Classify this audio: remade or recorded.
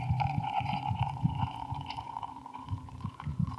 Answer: remade